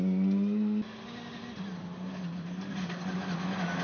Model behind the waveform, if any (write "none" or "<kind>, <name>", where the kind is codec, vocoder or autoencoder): none